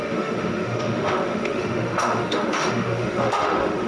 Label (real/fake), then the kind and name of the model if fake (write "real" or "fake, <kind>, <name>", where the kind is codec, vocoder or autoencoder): fake, autoencoder, DAC-VAE